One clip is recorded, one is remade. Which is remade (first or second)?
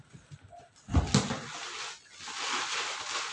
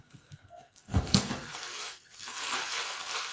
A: second